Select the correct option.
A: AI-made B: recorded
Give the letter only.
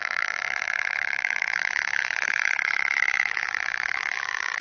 A